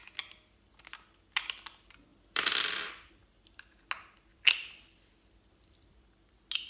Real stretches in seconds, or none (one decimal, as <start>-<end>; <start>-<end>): 0.0-2.1; 3.1-4.3; 5.1-6.7